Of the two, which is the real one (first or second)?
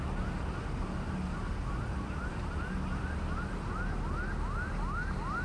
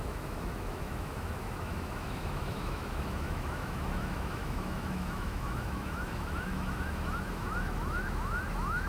first